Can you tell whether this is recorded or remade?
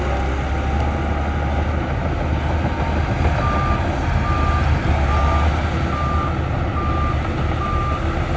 recorded